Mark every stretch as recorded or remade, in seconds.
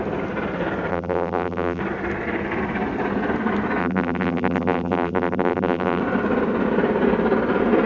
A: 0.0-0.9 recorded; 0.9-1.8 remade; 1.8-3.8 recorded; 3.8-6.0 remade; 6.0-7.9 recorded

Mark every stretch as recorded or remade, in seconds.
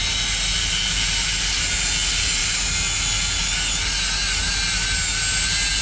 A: 0.0-5.8 recorded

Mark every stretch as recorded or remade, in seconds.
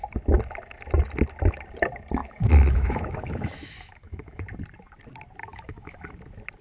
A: 0.0-2.2 recorded; 2.2-4.4 remade; 4.4-5.4 recorded; 5.4-6.1 remade; 6.1-6.6 recorded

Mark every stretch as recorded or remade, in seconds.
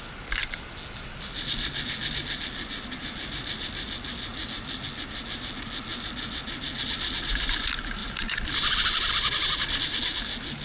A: 0.0-2.2 recorded; 2.2-3.0 remade; 3.0-4.3 recorded; 4.3-4.8 remade; 4.8-8.0 recorded; 8.0-9.1 remade; 9.1-10.6 recorded